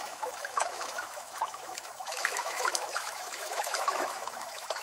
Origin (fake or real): fake